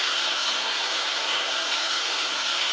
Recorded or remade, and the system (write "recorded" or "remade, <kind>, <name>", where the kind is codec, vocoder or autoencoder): remade, codec, SNAC